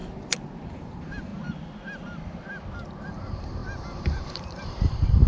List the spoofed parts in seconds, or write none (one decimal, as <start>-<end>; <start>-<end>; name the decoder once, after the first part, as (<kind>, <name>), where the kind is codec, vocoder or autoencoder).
0.7-1.3 (vocoder, BigVGAN v2); 3.1-5.3